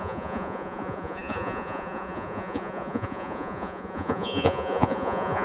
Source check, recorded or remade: remade